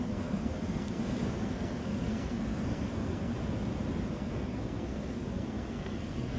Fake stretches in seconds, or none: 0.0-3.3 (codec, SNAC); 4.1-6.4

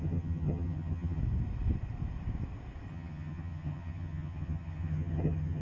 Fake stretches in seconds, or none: 0.0-1.2 (vocoder, HiFi-GAN); 2.9-5.6